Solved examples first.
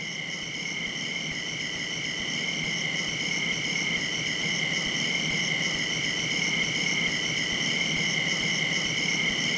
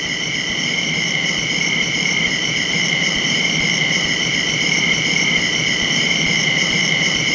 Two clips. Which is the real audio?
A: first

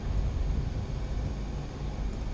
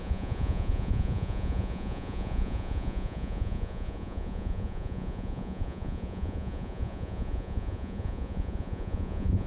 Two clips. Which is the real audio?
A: first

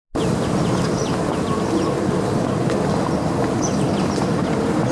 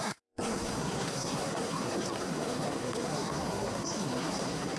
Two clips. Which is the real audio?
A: first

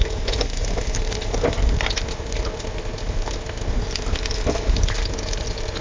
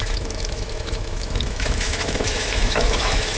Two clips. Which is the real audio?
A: first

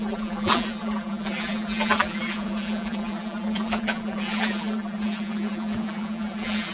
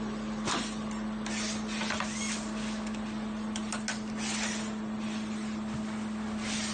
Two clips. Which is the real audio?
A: second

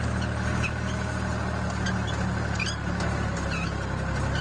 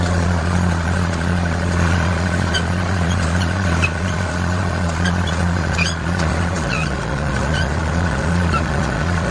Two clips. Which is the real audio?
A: first